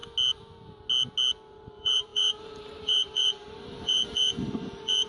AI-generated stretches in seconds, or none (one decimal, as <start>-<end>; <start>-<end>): 1.5-5.1

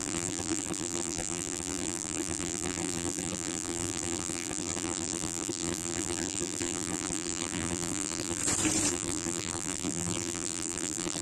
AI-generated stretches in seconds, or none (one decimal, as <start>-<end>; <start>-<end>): 0.0-8.4; 8.9-11.2

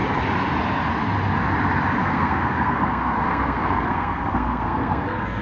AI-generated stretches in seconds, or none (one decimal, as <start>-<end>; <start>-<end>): 2.0-5.4